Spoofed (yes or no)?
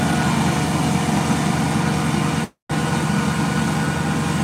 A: no